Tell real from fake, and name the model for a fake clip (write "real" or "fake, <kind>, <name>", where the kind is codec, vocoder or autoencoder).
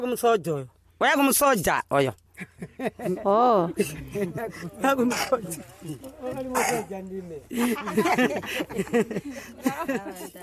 real